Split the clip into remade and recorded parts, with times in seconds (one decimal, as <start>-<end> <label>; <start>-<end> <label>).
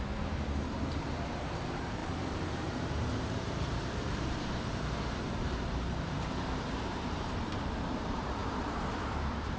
0.0-9.6 remade